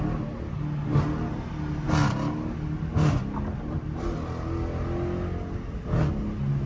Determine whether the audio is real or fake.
real